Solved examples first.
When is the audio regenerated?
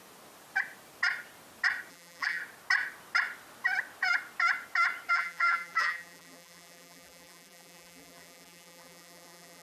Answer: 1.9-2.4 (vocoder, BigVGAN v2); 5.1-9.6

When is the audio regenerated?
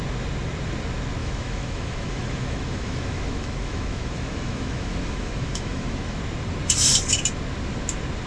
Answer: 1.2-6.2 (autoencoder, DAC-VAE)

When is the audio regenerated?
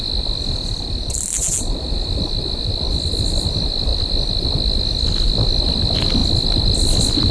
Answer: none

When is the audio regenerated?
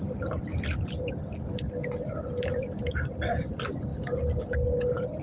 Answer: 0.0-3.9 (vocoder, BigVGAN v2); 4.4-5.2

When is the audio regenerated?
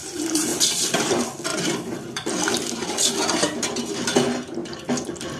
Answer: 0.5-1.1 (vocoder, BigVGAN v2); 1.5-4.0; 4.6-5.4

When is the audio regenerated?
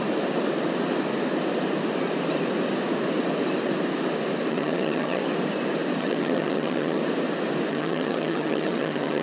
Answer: 4.5-5.2 (vocoder, HiFi-GAN); 6.0-7.0; 7.7-9.2